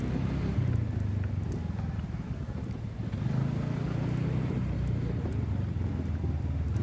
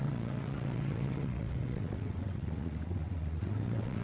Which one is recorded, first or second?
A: first